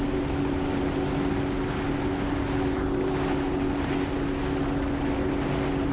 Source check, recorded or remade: recorded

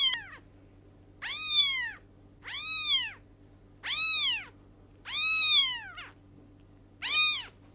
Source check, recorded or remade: recorded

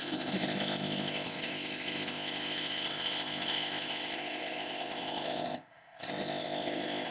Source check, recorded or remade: remade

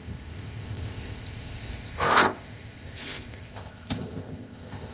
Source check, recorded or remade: remade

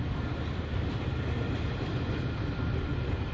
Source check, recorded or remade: recorded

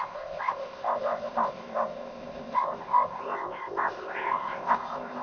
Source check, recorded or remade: remade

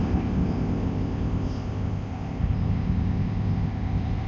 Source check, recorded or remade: remade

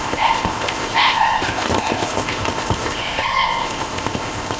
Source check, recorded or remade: remade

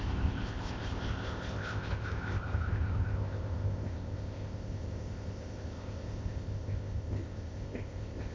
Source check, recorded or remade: remade